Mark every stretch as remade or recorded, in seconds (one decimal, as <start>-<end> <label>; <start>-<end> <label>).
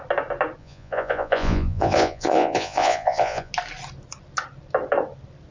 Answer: 0.0-0.6 recorded; 0.6-3.5 remade; 3.5-5.5 recorded